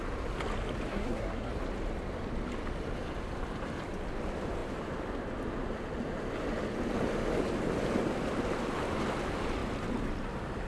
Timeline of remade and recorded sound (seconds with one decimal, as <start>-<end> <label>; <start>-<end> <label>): 0.0-0.9 recorded; 0.9-1.5 remade; 1.5-10.7 recorded